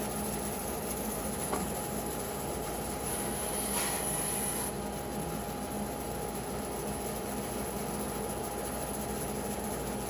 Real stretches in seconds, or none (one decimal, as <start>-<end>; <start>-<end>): 0.0-0.6; 3.5-10.1